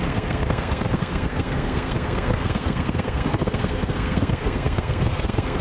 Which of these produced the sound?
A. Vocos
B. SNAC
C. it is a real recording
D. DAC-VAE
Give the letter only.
B